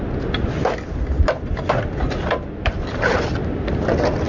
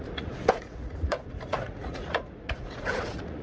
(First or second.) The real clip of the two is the first